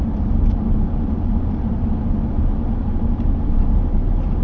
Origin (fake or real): fake